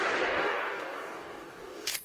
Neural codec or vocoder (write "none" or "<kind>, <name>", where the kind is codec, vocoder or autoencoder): codec, DAC